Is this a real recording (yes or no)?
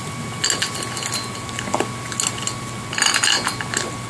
yes